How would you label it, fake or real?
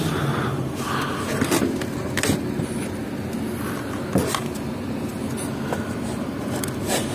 real